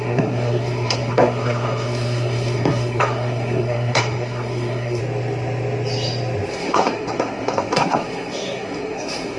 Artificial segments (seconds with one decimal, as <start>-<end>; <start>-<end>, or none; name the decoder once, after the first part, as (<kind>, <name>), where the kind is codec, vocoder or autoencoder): 0.0-5.0 (codec, SNAC); 6.5-9.4